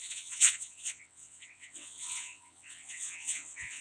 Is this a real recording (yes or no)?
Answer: no